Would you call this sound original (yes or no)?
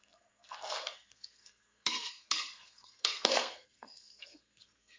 no